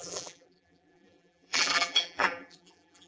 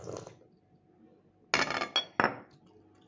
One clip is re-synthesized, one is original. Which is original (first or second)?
second